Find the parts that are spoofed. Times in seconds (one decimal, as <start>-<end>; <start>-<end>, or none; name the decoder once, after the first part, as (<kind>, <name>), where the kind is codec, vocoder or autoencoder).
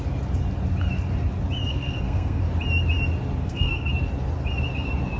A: 1.7-2.4 (codec, SNAC); 3.4-3.9